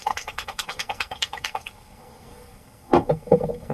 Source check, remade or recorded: remade